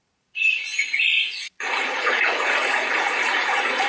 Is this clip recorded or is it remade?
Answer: remade